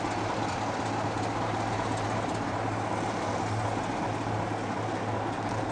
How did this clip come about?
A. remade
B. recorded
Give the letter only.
B